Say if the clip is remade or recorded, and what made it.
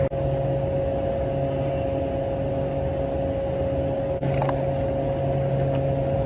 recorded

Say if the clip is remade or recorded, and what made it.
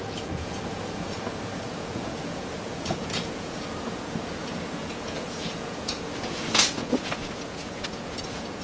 remade, vocoder, Vocos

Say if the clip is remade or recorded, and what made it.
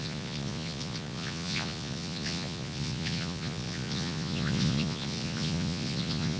remade, vocoder, Vocos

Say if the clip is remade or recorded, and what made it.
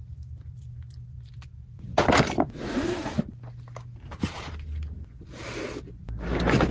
recorded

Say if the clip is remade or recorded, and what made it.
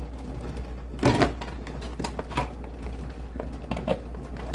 recorded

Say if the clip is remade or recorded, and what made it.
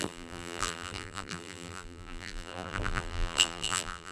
remade, vocoder, BigVGAN v2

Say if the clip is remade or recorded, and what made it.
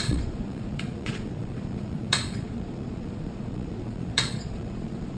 remade, vocoder, Vocos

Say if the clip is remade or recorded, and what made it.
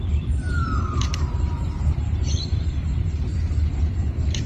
remade, vocoder, BigVGAN v2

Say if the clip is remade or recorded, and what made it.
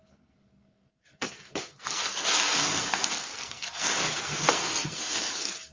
remade, codec, SNAC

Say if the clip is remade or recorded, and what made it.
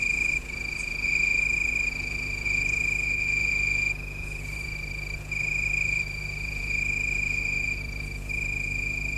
remade, vocoder, Vocos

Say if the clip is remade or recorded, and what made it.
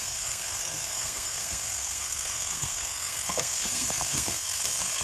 remade, codec, SNAC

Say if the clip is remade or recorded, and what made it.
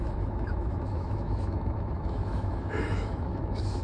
remade, autoencoder, DAC-VAE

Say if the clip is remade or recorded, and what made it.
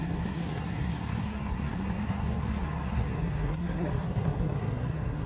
remade, codec, SNAC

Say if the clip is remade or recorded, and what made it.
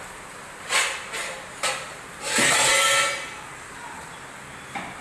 recorded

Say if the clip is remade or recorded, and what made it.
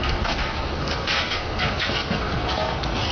remade, codec, SNAC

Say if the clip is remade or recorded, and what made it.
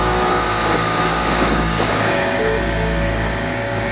remade, codec, DAC